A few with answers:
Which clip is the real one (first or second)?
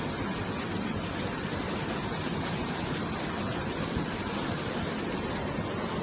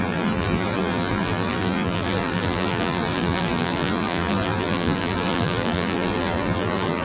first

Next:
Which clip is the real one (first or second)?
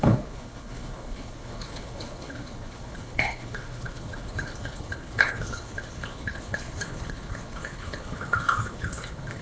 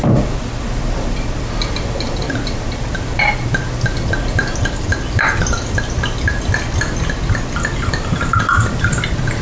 second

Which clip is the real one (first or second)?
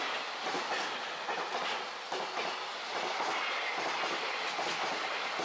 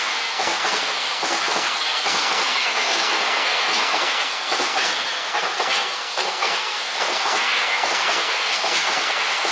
first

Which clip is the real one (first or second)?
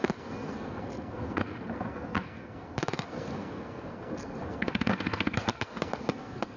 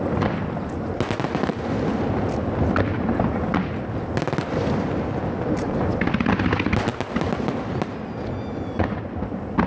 second